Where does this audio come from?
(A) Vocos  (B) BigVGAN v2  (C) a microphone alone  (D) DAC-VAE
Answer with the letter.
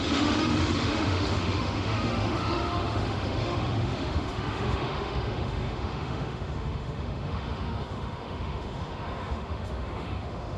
D